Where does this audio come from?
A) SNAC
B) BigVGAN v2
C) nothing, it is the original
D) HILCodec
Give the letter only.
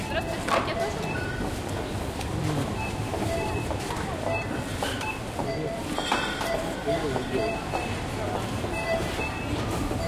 B